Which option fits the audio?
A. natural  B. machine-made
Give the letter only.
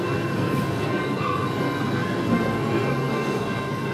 B